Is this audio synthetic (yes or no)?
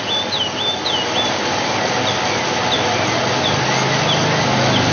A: no